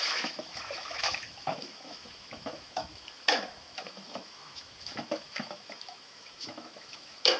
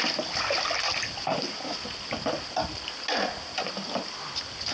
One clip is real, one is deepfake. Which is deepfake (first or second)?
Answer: first